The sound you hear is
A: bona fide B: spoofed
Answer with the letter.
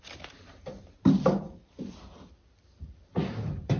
B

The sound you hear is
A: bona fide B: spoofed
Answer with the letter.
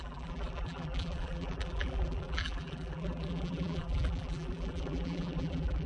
B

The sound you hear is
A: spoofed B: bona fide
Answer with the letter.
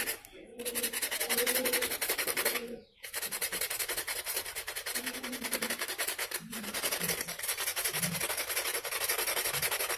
A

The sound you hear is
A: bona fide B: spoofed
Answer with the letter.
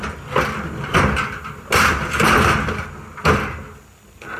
A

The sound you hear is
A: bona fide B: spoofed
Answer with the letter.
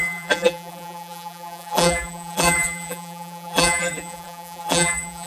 B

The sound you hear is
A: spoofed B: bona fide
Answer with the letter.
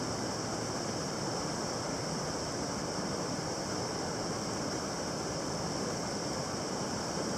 B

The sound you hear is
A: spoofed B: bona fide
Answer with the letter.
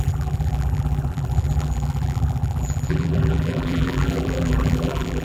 A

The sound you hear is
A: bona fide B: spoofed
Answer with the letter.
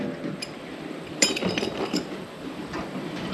B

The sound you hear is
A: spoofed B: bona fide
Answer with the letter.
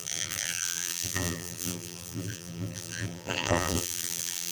A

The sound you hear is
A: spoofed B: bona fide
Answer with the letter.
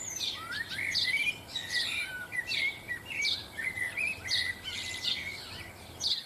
A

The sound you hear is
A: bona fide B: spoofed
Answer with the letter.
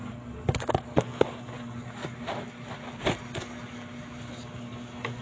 A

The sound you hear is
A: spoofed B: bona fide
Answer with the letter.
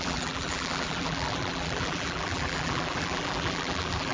A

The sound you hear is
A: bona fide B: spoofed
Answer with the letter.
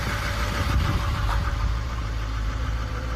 B